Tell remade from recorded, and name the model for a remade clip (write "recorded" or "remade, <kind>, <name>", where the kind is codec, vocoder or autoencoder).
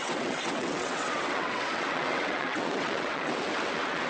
remade, vocoder, WaveNeXt